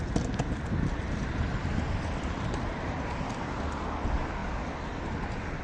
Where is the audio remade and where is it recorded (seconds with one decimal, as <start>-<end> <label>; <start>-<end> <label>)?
0.0-1.2 recorded; 1.2-3.5 remade; 3.5-5.6 recorded